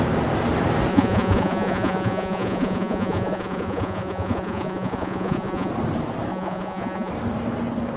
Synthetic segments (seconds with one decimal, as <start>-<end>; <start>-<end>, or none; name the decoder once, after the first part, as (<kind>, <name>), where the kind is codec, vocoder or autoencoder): 0.9-5.7 (vocoder, Vocos); 6.3-7.1